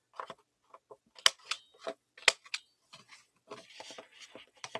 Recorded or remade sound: recorded